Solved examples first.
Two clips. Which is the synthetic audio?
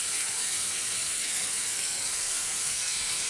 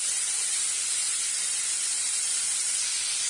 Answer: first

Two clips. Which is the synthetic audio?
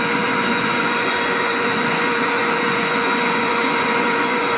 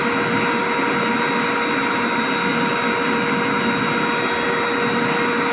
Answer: first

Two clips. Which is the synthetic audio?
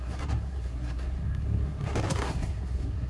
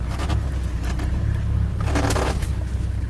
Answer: first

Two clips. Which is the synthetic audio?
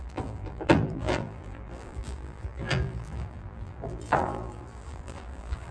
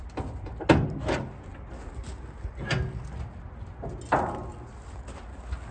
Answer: first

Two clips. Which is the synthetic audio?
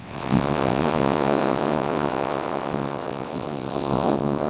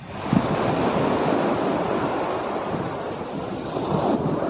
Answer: first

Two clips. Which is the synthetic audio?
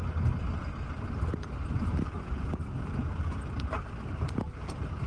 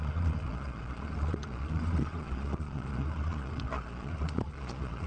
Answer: second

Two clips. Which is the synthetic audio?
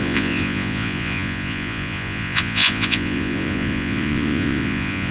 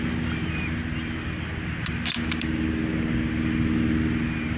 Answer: first